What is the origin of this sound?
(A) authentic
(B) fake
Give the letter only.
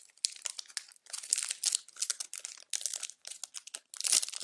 A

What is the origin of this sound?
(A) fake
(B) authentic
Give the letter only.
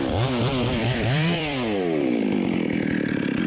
A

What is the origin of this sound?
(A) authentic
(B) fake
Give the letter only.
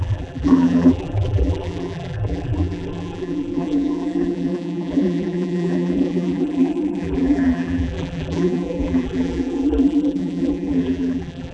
B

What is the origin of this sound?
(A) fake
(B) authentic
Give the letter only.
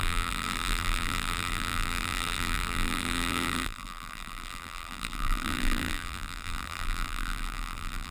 A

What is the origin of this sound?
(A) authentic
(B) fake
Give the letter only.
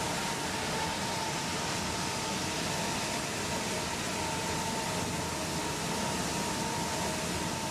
A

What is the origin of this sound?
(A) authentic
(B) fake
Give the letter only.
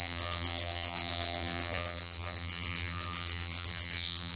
B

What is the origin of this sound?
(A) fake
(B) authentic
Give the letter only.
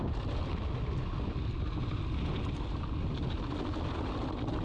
B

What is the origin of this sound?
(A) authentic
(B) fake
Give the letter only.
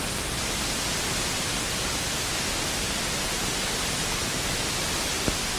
A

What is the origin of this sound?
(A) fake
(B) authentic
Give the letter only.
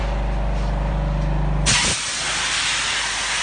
B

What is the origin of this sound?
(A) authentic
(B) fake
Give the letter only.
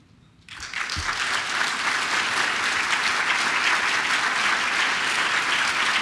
A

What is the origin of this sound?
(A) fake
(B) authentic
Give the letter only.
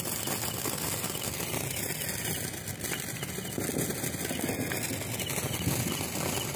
B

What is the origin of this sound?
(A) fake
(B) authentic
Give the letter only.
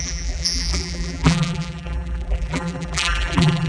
A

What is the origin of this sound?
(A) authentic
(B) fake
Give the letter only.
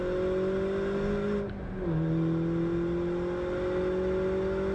A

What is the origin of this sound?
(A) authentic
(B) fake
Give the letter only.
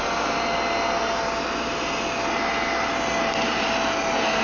A